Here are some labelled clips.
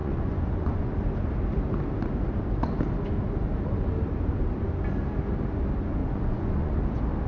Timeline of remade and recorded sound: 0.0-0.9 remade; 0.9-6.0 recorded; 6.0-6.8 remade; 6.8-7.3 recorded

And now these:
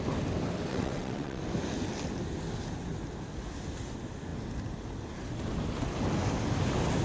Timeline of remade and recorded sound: 0.0-0.7 recorded; 0.7-1.4 remade; 1.4-7.0 recorded

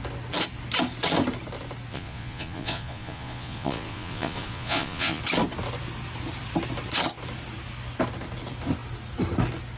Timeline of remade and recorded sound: 0.0-1.9 recorded; 1.9-5.2 remade; 5.2-9.8 recorded

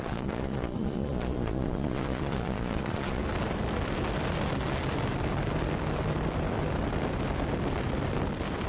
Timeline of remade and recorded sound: 0.0-3.2 remade; 3.2-8.7 recorded